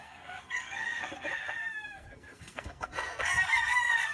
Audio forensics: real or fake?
fake